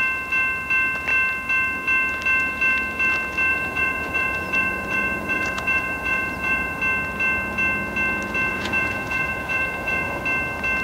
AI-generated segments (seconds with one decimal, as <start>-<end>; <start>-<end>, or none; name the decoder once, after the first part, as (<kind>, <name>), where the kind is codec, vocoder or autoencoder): 3.5-6.8 (vocoder, Vocos); 8.5-10.2